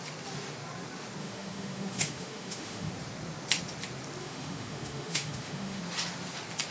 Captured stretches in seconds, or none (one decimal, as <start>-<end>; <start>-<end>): 0.0-1.2; 2.9-4.2; 5.8-6.7